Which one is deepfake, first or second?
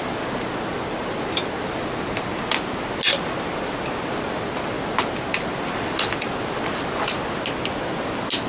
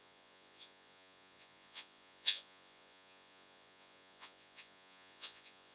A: second